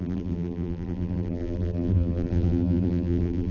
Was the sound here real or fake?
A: fake